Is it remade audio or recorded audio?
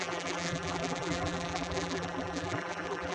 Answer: remade